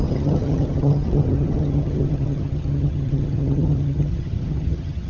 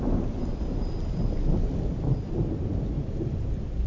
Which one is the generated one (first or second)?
first